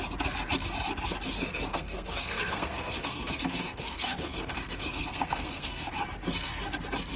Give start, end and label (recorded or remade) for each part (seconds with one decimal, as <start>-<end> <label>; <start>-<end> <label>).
0.0-1.7 recorded; 1.7-6.0 remade; 6.0-7.2 recorded